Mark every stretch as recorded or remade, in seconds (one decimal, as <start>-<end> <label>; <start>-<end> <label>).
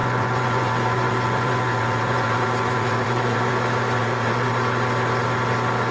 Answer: 0.0-3.5 remade; 3.5-4.0 recorded; 4.0-4.5 remade; 4.5-5.9 recorded